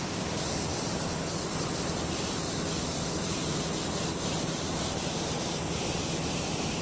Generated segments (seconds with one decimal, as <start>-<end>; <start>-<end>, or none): none